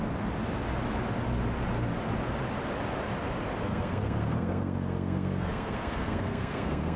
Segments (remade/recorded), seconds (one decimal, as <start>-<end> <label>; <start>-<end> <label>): 0.0-3.6 recorded; 3.6-7.0 remade